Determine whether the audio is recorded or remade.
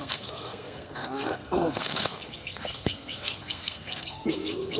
remade